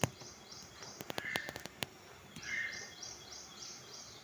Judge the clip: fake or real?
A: real